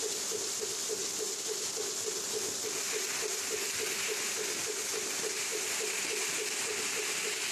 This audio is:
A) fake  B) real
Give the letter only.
B